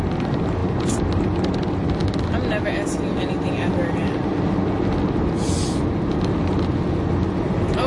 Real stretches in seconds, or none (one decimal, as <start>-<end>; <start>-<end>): 0.0-7.9